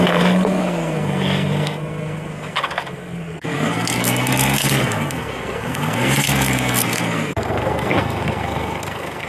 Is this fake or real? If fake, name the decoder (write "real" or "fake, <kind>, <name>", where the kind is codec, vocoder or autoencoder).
fake, codec, SNAC